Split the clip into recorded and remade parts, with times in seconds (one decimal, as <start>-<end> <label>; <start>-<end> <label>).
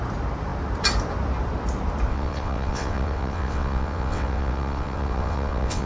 0.0-2.1 recorded; 2.1-5.9 remade